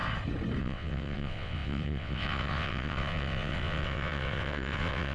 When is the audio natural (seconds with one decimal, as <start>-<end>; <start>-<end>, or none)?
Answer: 0.0-0.6